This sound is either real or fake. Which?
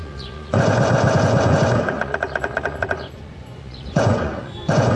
fake